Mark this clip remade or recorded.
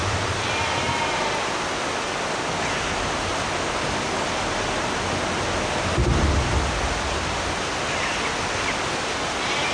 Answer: recorded